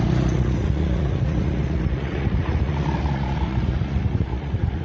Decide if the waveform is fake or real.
fake